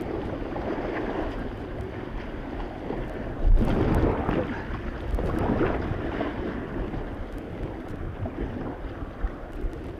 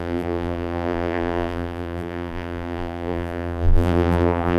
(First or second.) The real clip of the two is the first